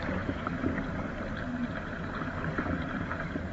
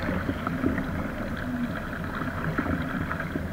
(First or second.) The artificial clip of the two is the first